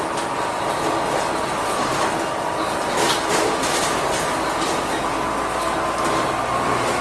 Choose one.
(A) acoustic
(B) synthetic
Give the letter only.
A